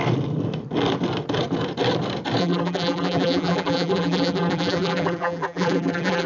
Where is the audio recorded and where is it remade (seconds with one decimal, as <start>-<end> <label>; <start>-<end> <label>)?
0.0-2.4 recorded; 2.4-6.3 remade